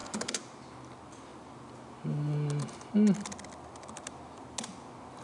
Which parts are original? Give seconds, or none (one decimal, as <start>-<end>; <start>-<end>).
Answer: 0.0-5.2